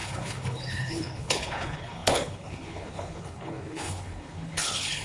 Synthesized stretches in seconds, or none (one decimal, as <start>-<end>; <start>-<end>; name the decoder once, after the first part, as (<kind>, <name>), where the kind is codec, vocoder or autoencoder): 0.0-5.0 (codec, HILCodec)